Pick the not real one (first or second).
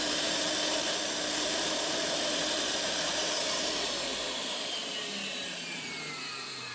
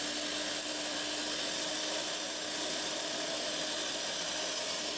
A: first